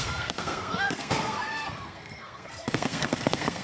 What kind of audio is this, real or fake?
fake